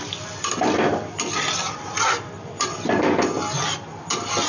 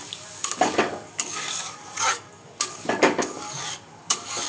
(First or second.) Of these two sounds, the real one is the first